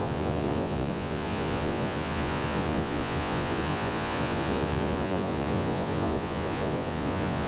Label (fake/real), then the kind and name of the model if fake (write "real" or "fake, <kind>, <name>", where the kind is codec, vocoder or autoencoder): fake, vocoder, Vocos